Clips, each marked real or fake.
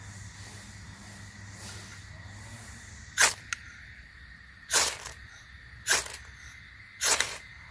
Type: real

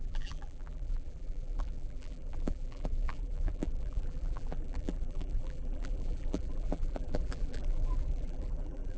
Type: fake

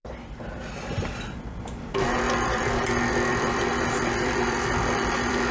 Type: fake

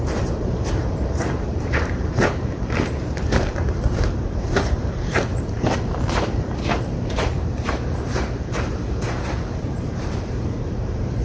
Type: fake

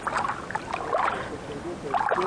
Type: real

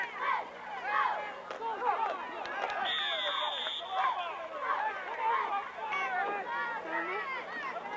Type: real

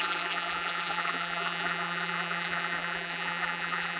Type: fake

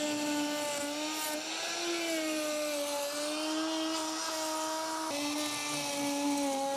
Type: real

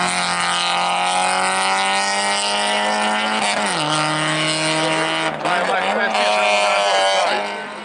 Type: real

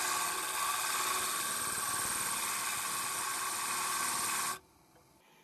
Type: real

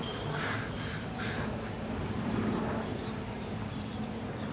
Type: fake